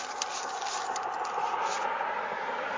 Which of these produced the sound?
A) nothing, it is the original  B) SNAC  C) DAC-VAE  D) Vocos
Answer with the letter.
A